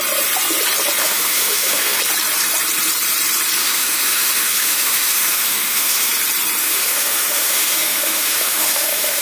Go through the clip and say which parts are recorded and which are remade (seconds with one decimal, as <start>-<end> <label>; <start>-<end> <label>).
0.0-1.0 recorded; 1.0-2.0 remade; 2.0-3.6 recorded; 3.6-6.1 remade; 6.1-6.6 recorded; 6.6-9.2 remade